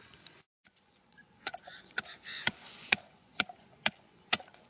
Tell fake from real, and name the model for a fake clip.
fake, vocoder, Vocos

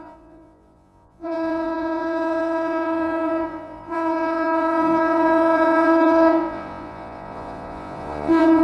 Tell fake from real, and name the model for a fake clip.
fake, vocoder, Vocos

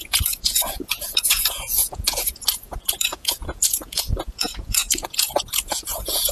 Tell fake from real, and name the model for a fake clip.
fake, vocoder, Vocos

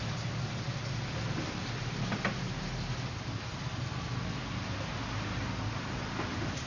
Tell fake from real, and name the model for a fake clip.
real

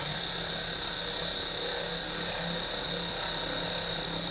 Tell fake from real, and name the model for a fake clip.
real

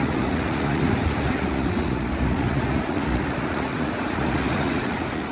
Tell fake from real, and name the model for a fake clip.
fake, vocoder, Vocos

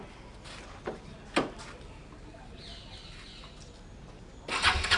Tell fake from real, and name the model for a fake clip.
real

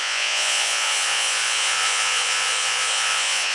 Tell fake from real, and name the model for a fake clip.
fake, vocoder, Vocos